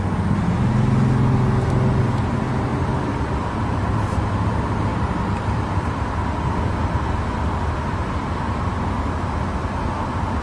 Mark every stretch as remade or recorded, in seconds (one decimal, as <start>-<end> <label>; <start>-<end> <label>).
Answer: 0.0-2.7 recorded; 2.7-4.5 remade; 4.5-4.9 recorded; 4.9-6.1 remade; 6.1-10.4 recorded